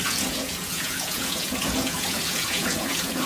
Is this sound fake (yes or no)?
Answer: yes